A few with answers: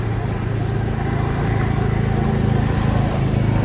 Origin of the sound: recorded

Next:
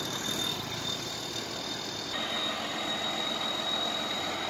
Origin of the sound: recorded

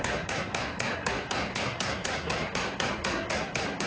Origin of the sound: remade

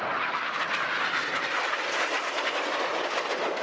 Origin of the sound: recorded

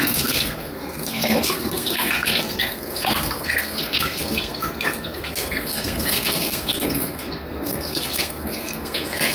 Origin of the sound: remade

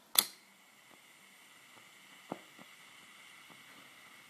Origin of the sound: recorded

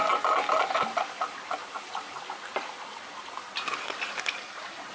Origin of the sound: recorded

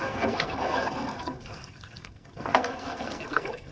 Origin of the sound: remade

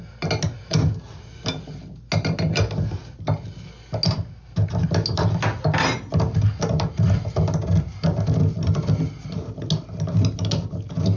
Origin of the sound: recorded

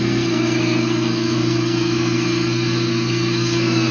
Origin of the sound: remade